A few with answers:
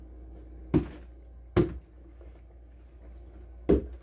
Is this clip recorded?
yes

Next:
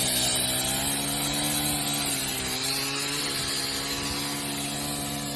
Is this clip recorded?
yes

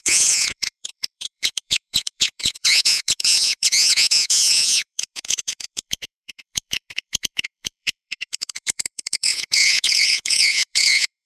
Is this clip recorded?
no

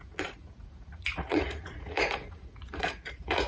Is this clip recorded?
no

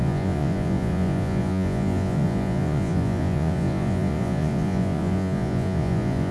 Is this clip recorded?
no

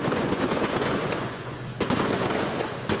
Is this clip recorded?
no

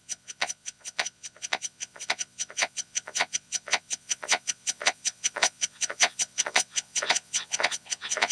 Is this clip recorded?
no